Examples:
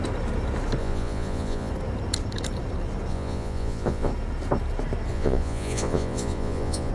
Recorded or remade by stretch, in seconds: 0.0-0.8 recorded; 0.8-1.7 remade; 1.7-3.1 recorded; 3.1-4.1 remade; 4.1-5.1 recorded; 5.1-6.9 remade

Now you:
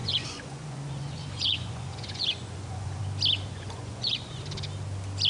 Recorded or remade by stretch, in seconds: 0.0-3.0 remade; 3.0-3.5 recorded; 3.5-4.4 remade; 4.4-5.3 recorded

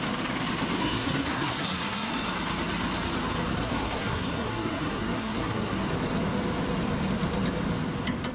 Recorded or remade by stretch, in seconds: 0.0-0.8 recorded; 0.8-2.1 remade; 2.1-3.6 recorded; 3.6-5.8 remade; 5.8-8.3 recorded

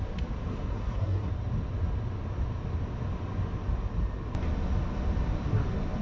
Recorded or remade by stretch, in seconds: 0.0-0.5 recorded; 0.5-1.3 remade; 1.3-6.0 recorded

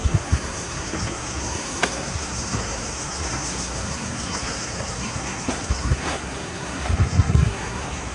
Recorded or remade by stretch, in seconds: 0.0-8.1 remade

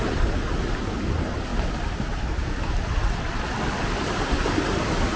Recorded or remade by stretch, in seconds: 0.0-1.5 recorded; 1.5-2.2 remade; 2.2-5.2 recorded

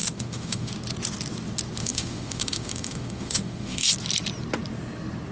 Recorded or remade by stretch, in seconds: 0.0-0.7 remade; 0.7-1.8 recorded; 1.8-3.9 remade; 3.9-5.3 recorded

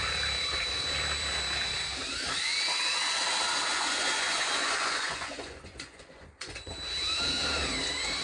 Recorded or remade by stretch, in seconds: 0.0-3.7 recorded; 3.7-6.7 remade; 6.7-8.2 recorded